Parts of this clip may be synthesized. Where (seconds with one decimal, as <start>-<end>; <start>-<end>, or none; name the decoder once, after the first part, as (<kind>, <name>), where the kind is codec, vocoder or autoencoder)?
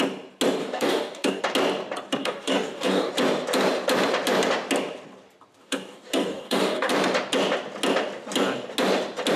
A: 0.6-1.4 (codec, DAC); 2.2-3.1; 5.6-6.9